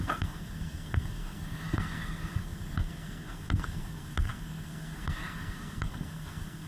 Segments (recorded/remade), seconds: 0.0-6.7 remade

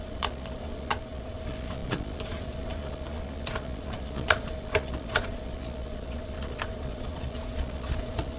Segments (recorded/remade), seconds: 0.0-8.4 remade

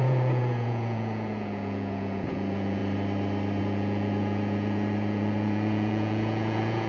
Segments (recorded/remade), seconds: 0.0-2.8 remade; 2.8-3.6 recorded; 3.6-6.9 remade

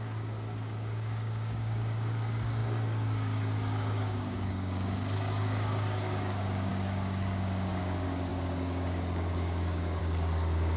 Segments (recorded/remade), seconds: 0.0-10.8 remade